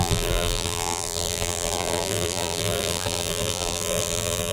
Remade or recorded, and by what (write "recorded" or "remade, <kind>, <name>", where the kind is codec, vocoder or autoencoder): remade, vocoder, BigVGAN v2